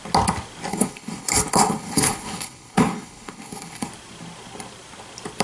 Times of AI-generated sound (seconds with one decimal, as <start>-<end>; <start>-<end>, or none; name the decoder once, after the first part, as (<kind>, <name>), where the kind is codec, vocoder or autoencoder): 0.7-3.9 (codec, HILCodec)